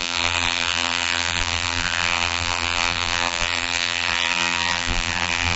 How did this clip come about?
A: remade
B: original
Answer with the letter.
A